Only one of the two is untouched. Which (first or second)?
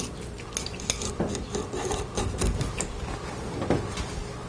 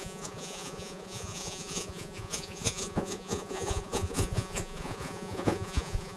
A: first